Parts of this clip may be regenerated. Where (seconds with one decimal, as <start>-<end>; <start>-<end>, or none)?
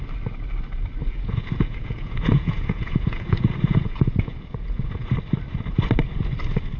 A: 1.0-5.1